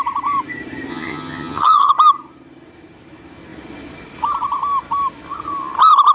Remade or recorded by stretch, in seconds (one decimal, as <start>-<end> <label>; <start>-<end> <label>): 0.0-0.9 recorded; 0.9-1.9 remade; 1.9-6.1 recorded

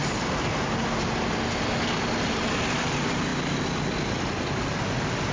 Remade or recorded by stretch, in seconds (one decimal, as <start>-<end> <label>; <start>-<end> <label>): 0.0-5.3 recorded